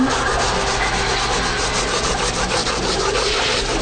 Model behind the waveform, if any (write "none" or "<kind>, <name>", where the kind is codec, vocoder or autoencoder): none